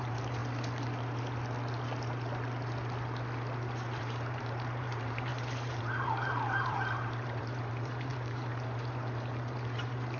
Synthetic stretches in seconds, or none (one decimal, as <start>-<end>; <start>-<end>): 0.0-0.4; 4.0-10.2